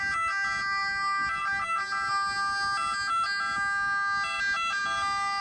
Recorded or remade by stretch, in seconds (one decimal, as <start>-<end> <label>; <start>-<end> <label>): 0.0-5.4 recorded